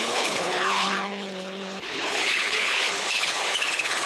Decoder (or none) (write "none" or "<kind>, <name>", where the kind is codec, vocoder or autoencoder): codec, HILCodec